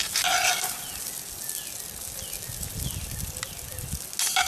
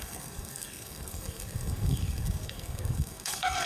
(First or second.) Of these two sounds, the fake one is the second